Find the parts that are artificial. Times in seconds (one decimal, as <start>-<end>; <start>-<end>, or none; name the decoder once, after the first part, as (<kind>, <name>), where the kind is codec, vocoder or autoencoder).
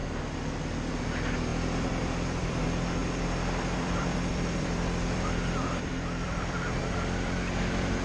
1.5-2.6 (vocoder, BigVGAN v2); 3.0-6.8